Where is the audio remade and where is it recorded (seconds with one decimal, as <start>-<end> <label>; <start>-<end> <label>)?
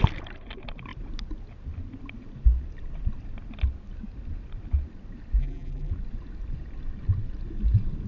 0.0-5.4 recorded; 5.4-5.9 remade; 5.9-8.1 recorded